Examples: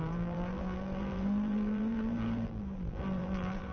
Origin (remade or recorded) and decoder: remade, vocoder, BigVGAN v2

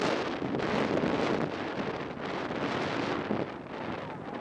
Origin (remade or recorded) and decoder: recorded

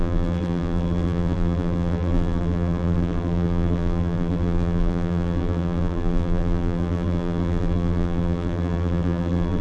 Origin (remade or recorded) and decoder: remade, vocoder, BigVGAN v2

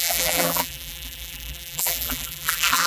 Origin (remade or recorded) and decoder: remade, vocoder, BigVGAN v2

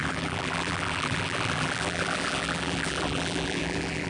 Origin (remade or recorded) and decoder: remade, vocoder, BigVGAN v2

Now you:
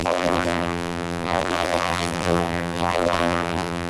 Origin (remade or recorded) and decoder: remade, vocoder, BigVGAN v2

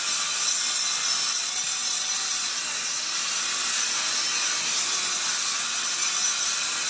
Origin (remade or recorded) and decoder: recorded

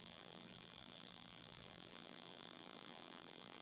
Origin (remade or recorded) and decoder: remade, vocoder, BigVGAN v2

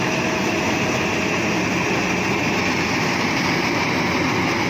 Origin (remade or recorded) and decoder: recorded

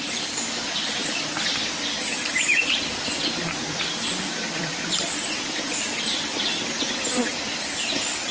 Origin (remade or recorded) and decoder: remade, vocoder, BigVGAN v2